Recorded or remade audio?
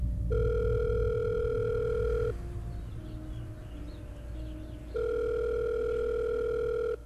recorded